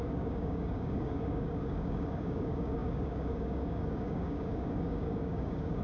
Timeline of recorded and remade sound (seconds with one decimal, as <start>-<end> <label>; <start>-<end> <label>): 0.0-5.8 remade